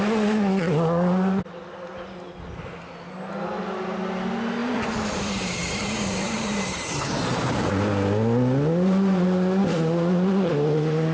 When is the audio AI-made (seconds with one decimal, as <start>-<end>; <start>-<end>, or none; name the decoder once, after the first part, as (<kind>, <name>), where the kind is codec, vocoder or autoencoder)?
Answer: 4.6-7.7 (vocoder, BigVGAN v2)